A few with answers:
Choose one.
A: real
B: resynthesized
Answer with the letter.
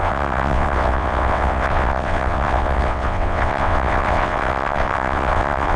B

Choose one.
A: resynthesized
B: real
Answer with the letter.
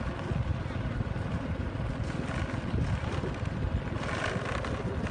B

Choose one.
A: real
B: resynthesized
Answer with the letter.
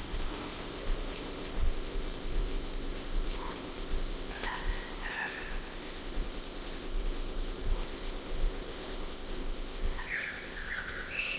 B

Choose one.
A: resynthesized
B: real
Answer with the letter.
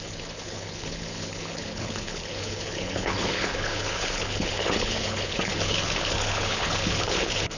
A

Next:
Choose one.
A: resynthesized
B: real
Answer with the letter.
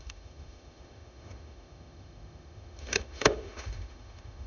A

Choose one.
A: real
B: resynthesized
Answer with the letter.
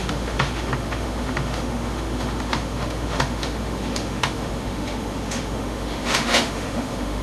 B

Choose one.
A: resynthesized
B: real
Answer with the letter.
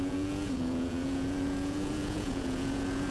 A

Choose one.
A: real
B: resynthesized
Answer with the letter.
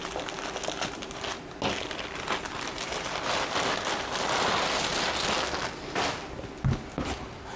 A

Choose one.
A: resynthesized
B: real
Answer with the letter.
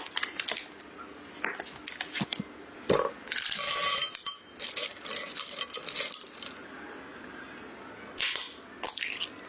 B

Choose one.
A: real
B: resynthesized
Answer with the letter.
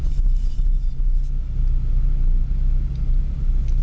A